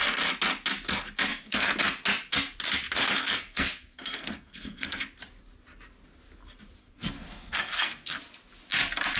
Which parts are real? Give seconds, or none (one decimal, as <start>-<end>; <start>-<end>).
0.0-1.3; 1.8-3.2; 5.0-6.8; 8.2-9.2